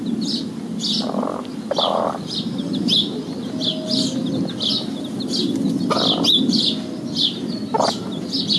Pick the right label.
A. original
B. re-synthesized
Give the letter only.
A